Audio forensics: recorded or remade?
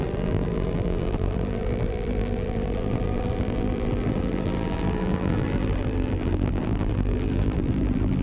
remade